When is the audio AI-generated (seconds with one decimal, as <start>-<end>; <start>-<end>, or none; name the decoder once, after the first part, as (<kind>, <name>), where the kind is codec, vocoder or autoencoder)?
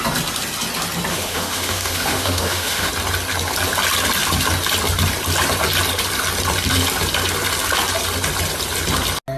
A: 1.1-2.9 (autoencoder, DAC-VAE)